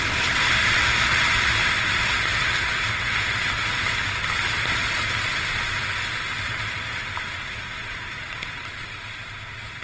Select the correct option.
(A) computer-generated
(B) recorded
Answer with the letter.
B